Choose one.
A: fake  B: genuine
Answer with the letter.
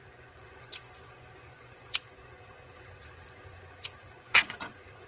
A